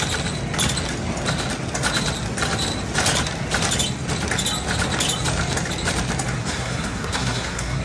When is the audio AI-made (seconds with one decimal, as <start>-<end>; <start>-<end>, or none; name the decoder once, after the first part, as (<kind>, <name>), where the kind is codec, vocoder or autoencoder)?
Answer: 6.4-7.8 (codec, SNAC)